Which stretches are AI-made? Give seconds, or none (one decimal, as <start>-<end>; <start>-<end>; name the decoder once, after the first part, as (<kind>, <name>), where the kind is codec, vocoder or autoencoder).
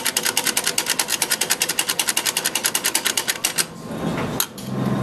1.1-1.7 (vocoder, BigVGAN v2)